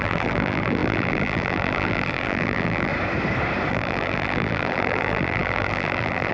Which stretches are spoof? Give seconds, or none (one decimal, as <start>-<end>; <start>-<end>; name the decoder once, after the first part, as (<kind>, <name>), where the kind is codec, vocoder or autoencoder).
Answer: 0.0-2.9 (vocoder, BigVGAN v2); 3.7-6.3